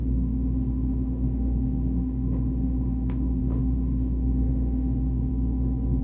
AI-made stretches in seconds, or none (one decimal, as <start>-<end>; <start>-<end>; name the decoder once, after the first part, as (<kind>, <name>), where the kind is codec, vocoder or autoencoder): 0.0-5.3 (autoencoder, DAC-VAE)